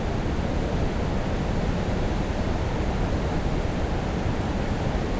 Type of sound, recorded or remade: recorded